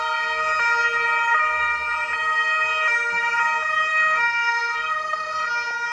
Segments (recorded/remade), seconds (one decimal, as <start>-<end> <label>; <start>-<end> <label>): 0.0-3.9 recorded; 3.9-5.5 remade; 5.5-5.9 recorded